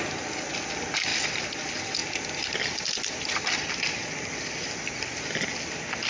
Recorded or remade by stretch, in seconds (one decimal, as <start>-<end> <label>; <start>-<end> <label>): 0.0-1.1 recorded; 1.1-1.6 remade; 1.6-2.0 recorded; 2.0-4.9 remade; 4.9-6.1 recorded